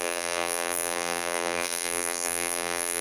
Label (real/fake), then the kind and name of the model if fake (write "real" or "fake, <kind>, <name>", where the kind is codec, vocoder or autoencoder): fake, vocoder, BigVGAN v2